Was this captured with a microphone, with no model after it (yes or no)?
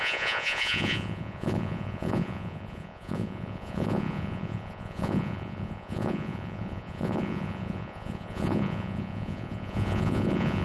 no